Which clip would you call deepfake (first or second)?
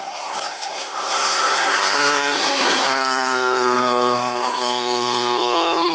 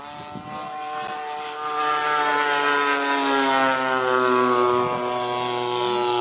first